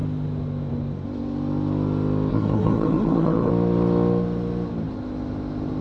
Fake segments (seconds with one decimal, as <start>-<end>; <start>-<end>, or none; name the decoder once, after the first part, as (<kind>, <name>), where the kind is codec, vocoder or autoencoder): 2.3-3.5 (codec, SNAC)